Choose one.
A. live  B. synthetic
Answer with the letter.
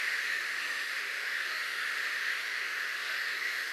B